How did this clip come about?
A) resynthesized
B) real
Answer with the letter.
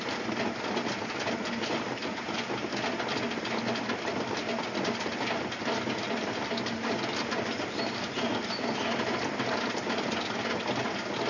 B